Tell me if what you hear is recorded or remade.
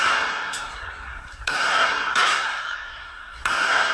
remade